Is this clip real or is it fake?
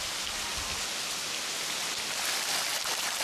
real